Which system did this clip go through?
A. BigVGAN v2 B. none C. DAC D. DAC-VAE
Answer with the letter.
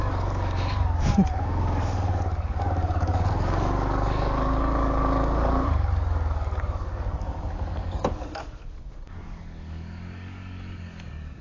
C